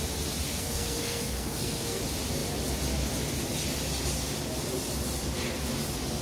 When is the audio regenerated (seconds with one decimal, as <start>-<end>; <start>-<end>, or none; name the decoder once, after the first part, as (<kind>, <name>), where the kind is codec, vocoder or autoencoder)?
0.5-2.0 (codec, SNAC)